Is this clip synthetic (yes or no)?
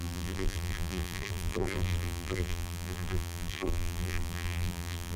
yes